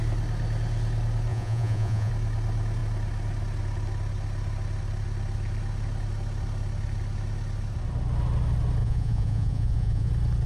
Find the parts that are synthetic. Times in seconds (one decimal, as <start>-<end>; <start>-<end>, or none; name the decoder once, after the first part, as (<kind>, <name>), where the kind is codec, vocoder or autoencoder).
1.3-2.1 (vocoder, Vocos); 8.8-10.1